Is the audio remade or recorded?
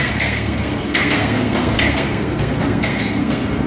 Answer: remade